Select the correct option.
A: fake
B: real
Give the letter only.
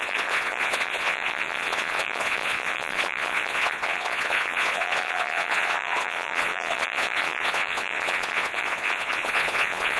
A